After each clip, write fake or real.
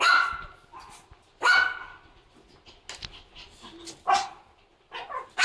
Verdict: real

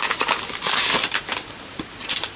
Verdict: real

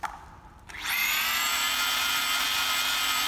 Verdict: real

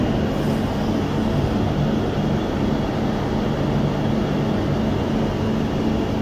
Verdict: real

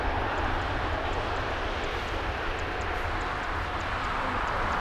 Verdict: real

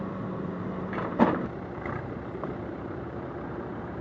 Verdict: fake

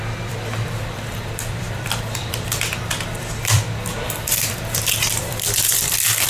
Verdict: fake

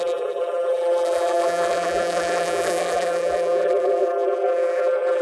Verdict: fake